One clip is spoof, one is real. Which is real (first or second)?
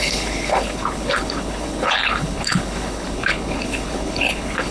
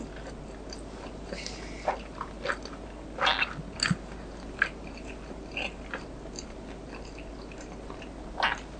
second